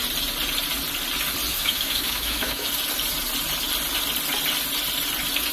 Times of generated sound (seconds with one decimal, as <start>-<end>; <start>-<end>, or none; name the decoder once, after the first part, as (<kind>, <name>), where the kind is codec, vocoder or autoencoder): 1.5-2.7 (autoencoder, DAC-VAE)